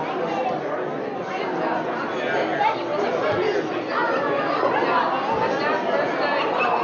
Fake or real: real